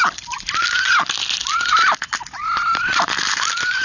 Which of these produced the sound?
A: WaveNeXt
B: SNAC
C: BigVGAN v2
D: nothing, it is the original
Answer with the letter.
D